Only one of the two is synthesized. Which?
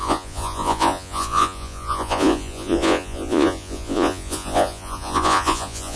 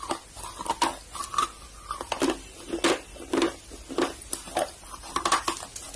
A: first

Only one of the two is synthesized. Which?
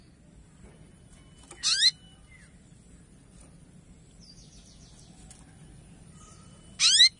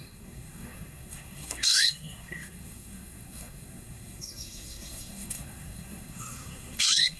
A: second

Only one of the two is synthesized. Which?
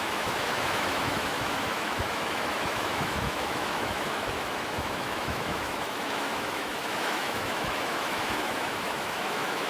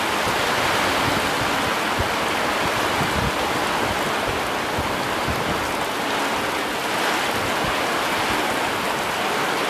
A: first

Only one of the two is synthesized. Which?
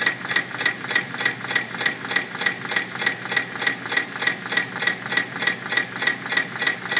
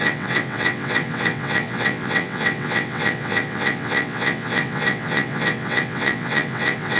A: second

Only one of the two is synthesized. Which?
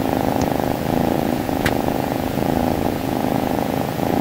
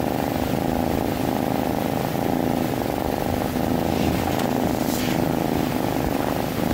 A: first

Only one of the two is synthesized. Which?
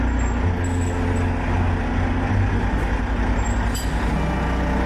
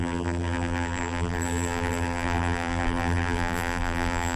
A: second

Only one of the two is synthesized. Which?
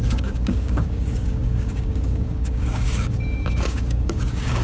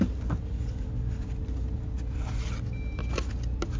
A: first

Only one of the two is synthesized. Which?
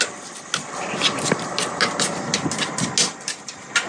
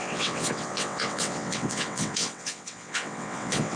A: second